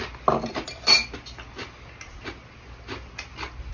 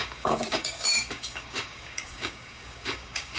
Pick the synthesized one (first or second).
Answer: second